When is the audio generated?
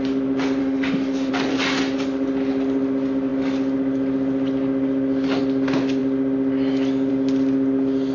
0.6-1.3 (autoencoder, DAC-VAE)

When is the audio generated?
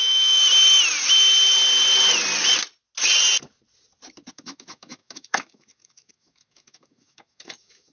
0.0-0.4 (autoencoder, DAC-VAE); 4.3-7.9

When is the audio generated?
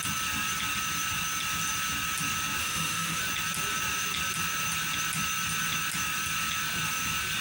2.6-3.2 (autoencoder, DAC-VAE)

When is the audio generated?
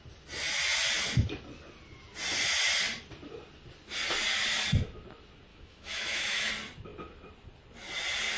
5.5-6.5 (autoencoder, DAC-VAE)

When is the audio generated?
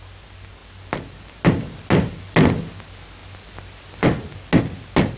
none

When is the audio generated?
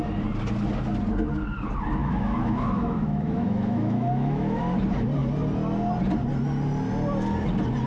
2.0-4.6 (autoencoder, DAC-VAE)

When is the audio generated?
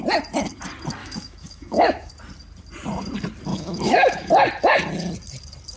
1.0-2.1 (autoencoder, DAC-VAE); 3.5-4.3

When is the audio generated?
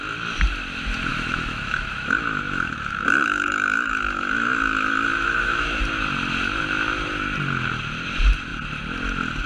1.1-5.8 (autoencoder, DAC-VAE)